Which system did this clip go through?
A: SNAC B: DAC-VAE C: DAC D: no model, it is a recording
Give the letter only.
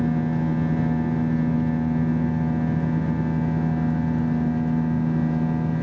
D